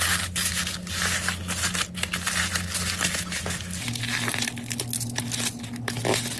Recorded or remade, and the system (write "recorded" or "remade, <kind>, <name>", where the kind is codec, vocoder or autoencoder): recorded